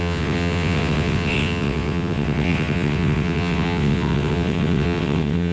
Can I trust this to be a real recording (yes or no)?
no